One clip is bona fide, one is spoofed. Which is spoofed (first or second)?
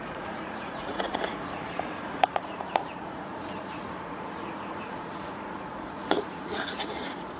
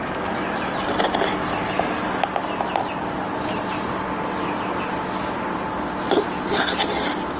first